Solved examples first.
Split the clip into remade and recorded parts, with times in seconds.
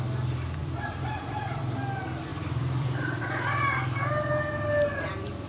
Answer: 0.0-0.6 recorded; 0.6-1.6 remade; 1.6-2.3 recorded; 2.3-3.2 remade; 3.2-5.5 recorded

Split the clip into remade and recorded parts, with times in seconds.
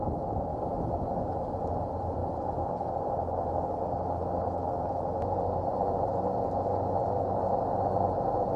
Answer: 0.0-8.6 recorded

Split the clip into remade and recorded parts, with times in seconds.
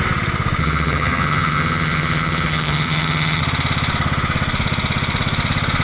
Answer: 0.0-0.6 recorded; 0.6-3.4 remade; 3.4-5.8 recorded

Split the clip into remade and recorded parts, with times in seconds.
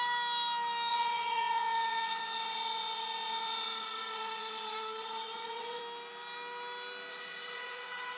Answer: 0.0-0.9 recorded; 0.9-5.8 remade; 5.8-7.1 recorded; 7.1-8.2 remade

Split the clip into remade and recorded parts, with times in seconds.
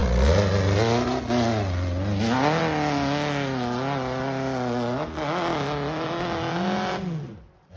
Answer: 0.0-7.8 recorded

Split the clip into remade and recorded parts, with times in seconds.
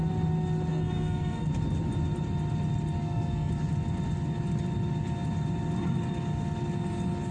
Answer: 0.0-0.7 recorded; 0.7-1.5 remade; 1.5-3.0 recorded; 3.0-3.5 remade; 3.5-7.3 recorded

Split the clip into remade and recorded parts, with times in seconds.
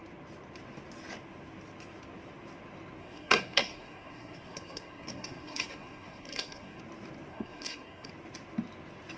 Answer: 0.0-3.0 recorded; 3.0-6.8 remade; 6.8-7.3 recorded; 7.3-8.1 remade; 8.1-9.2 recorded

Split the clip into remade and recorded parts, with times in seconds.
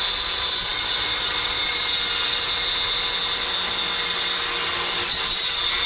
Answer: 0.0-5.9 recorded